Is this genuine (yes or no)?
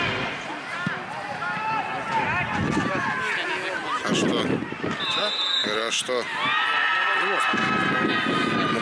yes